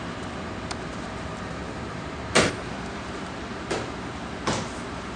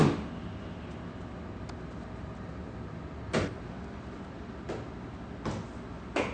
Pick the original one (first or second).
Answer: second